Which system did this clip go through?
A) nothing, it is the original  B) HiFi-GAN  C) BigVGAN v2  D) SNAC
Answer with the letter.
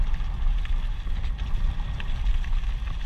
A